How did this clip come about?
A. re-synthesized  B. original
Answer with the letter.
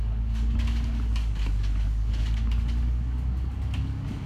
A